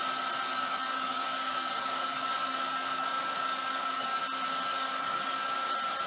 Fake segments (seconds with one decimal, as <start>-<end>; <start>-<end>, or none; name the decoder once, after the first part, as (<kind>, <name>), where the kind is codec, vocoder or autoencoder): 0.5-4.2 (codec, DAC); 4.7-5.5